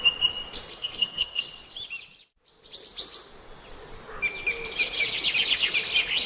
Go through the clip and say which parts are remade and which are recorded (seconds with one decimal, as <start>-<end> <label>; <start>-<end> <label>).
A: 0.0-0.7 recorded; 0.7-1.4 remade; 1.4-6.3 recorded